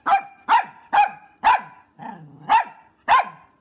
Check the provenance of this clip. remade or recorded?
recorded